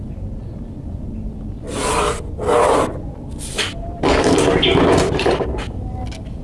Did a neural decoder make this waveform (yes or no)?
no